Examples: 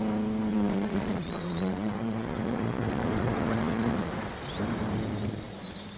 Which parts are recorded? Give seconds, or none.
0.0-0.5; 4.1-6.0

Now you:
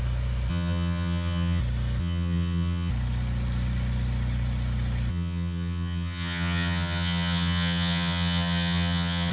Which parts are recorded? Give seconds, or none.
0.0-0.5; 1.6-2.0; 2.9-5.1

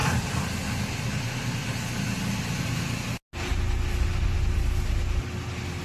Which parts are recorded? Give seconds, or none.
0.0-5.8